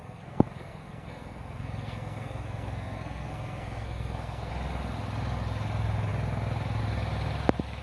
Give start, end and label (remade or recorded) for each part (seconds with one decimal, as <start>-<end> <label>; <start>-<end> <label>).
0.0-4.5 remade; 4.5-7.8 recorded